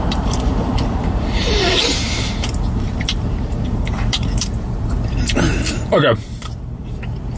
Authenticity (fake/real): fake